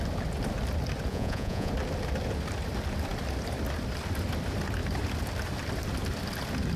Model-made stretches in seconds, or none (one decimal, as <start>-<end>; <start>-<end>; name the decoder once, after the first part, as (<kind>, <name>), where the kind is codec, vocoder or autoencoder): 1.1-1.7 (vocoder, Vocos)